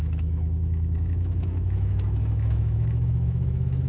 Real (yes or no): no